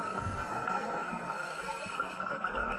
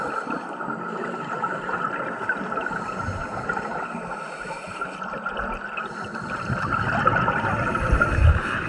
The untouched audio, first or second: second